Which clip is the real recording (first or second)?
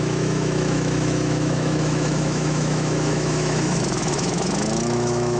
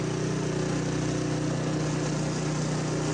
second